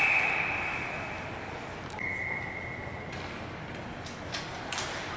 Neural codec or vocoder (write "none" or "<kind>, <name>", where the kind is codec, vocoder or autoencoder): none